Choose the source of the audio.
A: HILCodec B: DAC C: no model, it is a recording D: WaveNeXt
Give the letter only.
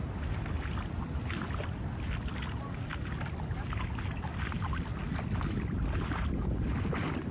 C